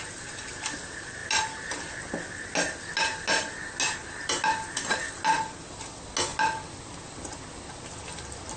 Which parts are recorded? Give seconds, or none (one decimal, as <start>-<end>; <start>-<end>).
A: 0.0-8.6